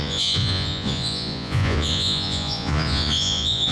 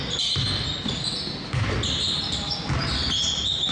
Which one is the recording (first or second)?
second